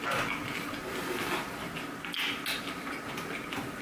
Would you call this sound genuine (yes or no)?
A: yes